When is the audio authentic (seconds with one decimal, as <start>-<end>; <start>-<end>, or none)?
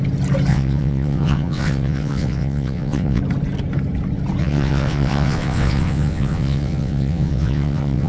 0.0-0.5; 3.2-4.4